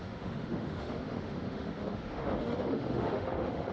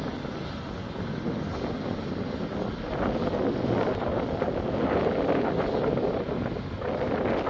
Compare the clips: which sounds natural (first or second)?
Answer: second